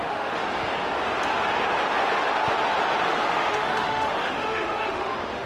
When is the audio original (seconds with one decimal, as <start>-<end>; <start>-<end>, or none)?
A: 0.4-3.0